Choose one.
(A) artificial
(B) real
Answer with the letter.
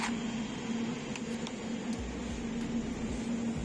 B